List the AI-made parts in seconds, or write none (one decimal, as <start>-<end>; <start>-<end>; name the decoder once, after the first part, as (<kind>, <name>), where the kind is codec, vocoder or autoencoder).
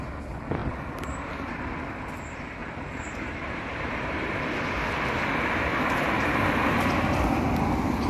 0.6-1.3 (vocoder, BigVGAN v2); 2.6-4.4; 5.7-6.5